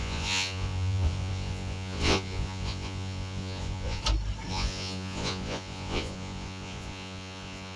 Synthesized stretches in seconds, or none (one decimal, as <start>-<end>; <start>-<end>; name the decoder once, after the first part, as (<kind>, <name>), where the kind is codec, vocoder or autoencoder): 0.0-4.0 (vocoder, Vocos); 4.5-7.8